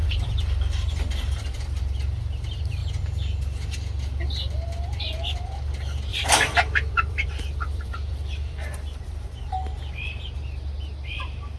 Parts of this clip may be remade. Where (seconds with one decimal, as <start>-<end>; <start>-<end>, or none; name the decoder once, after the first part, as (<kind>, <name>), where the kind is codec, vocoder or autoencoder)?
0.0-1.8 (vocoder, BigVGAN v2); 6.1-9.5